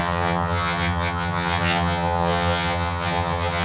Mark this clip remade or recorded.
remade